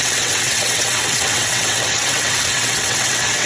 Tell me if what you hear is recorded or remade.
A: remade